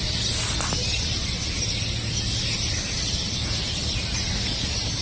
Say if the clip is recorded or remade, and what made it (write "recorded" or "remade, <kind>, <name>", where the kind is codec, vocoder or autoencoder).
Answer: recorded